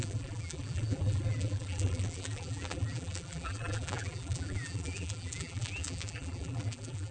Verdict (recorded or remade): remade